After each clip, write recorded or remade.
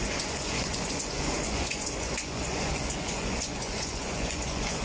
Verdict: remade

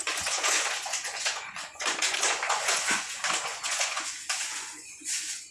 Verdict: remade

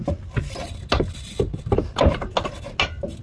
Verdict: recorded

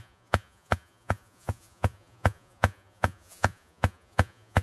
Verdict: remade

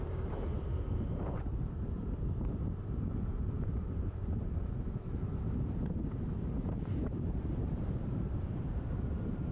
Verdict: remade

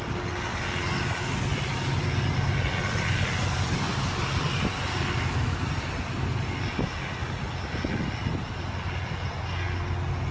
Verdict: recorded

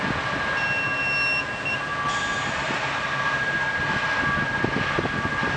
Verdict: recorded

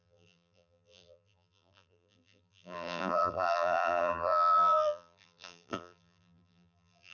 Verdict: remade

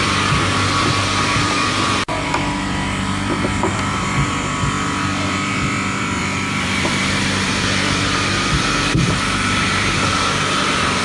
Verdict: remade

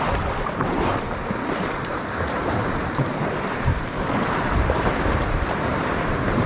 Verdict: remade